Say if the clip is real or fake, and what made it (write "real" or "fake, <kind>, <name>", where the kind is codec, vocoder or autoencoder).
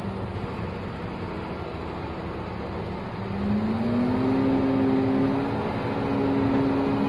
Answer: real